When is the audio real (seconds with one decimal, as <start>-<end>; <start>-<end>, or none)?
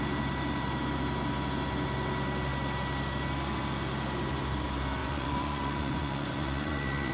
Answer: 0.0-5.0